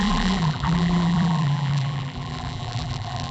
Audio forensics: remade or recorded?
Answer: remade